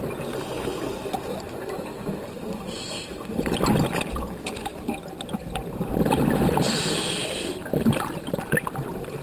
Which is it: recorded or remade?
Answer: recorded